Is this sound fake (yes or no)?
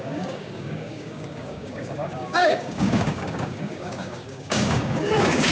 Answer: yes